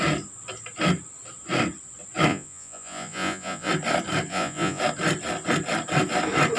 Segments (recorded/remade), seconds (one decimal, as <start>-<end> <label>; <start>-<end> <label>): 0.0-2.3 recorded; 2.3-3.7 remade; 3.7-4.3 recorded; 4.3-4.8 remade; 4.8-6.6 recorded